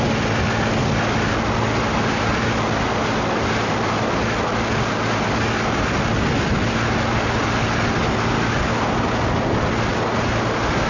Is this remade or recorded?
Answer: recorded